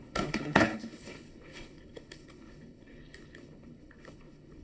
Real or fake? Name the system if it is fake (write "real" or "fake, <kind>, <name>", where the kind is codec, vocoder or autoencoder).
fake, codec, HILCodec